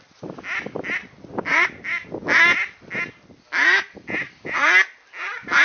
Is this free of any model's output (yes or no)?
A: yes